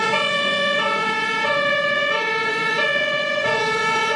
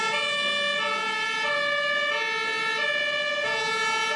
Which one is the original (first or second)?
second